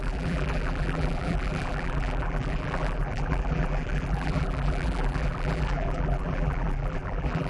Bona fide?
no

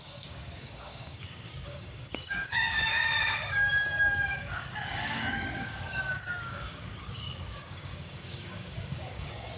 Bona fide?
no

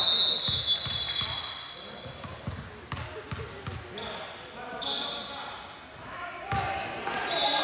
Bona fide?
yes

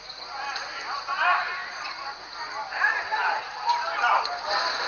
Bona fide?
yes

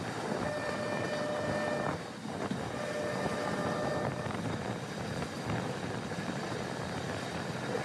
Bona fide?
yes